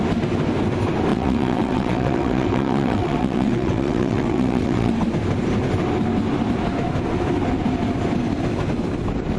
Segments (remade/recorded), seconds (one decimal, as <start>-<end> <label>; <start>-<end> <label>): 0.0-1.1 recorded; 1.1-4.9 remade; 4.9-9.4 recorded